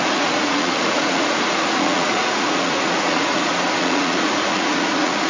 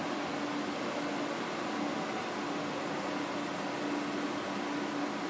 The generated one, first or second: first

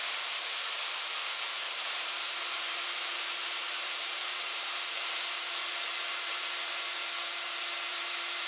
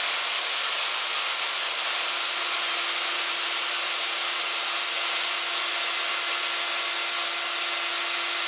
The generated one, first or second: first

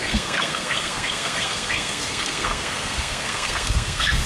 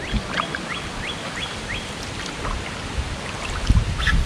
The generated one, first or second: first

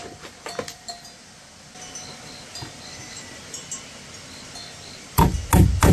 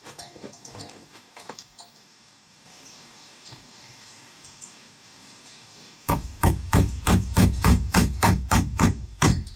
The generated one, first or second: second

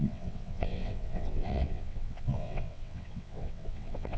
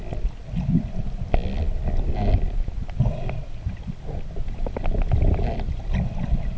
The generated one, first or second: first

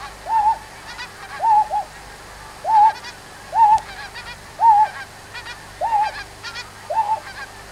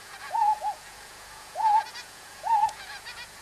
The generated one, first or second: second